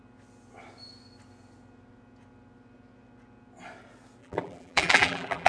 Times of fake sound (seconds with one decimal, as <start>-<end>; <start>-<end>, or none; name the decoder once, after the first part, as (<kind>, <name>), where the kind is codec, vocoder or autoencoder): 4.2-5.5 (vocoder, BigVGAN v2)